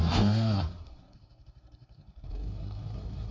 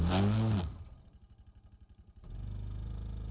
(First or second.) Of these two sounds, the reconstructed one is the first